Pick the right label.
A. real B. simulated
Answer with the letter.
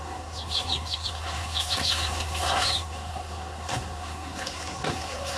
B